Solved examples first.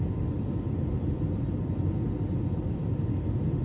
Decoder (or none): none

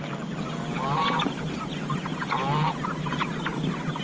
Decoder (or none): none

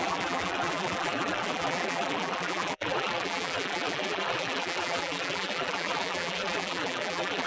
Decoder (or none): vocoder, BigVGAN v2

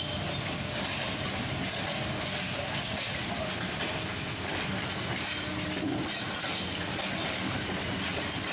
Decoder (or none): none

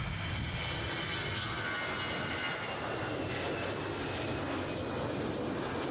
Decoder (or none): none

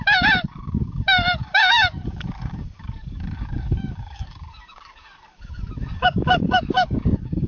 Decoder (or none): codec, DAC